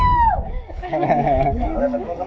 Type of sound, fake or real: fake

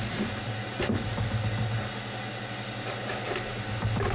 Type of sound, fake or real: real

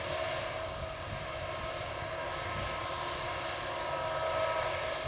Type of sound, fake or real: real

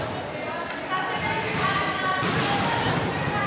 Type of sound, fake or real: real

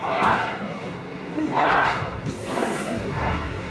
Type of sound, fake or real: fake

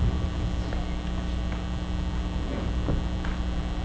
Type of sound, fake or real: real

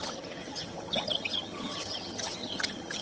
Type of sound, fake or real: fake